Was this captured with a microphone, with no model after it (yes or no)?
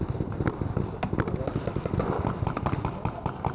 yes